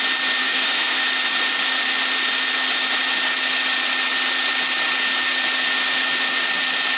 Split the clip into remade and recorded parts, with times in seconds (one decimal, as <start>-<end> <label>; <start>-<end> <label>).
0.0-0.4 recorded; 0.4-1.0 remade; 1.0-7.0 recorded